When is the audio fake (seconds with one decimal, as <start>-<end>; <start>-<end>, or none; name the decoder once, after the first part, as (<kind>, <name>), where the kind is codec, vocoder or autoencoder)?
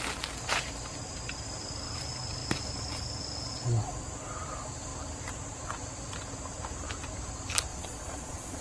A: 7.7-8.6 (vocoder, Vocos)